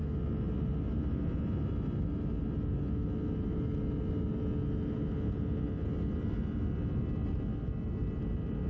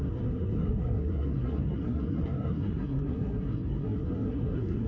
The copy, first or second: second